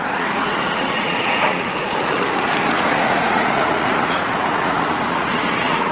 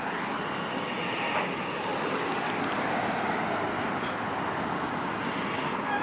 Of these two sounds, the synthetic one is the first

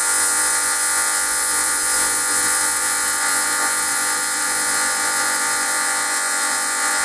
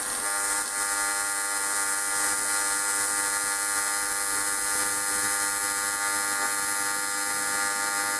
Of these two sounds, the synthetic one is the first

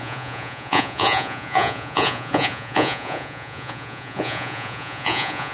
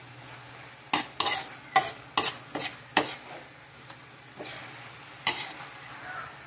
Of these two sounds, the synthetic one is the first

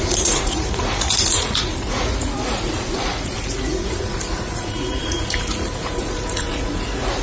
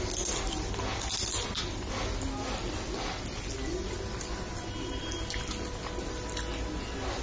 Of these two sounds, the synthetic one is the first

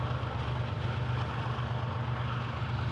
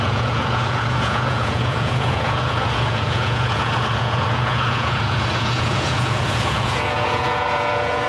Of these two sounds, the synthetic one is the second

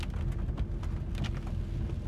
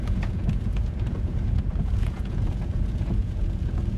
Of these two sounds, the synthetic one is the second